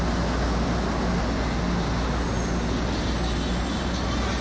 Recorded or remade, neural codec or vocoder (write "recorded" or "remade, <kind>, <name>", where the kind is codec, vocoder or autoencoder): recorded